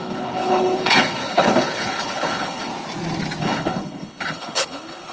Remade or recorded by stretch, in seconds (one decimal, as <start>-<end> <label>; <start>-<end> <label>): 0.0-2.7 remade; 2.7-3.4 recorded; 3.4-5.1 remade